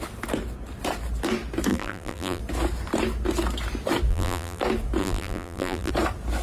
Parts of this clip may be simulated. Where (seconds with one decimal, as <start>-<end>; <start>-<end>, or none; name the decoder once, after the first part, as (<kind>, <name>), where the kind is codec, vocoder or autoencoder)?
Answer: 1.7-2.4 (vocoder, BigVGAN v2); 4.1-4.6; 5.0-5.9